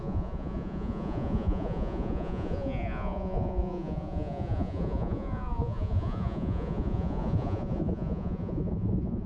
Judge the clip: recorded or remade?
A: remade